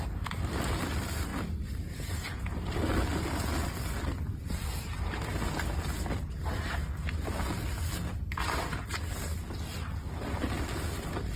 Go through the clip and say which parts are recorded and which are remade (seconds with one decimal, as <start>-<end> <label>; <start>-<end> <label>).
0.0-11.4 recorded